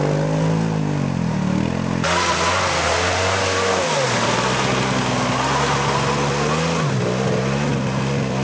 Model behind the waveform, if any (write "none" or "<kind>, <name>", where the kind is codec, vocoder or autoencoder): none